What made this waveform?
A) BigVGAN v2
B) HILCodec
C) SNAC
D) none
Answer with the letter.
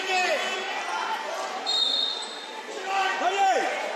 A